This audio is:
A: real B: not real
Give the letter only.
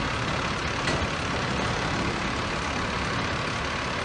A